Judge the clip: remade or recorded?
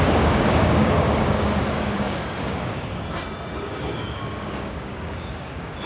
remade